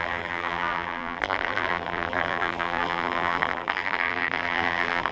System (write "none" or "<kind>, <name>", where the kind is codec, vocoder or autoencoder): vocoder, BigVGAN v2